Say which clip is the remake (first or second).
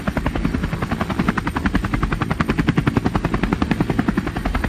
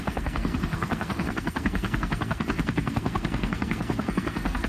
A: second